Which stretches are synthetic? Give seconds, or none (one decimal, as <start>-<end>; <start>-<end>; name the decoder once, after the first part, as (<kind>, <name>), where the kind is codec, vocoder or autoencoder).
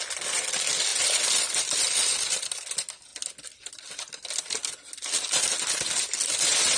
none